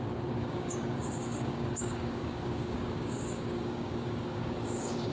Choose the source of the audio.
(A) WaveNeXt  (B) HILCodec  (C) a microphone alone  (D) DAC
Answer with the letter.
D